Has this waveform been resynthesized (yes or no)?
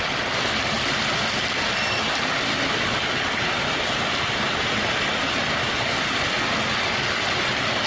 no